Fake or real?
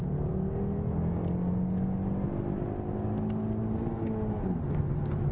real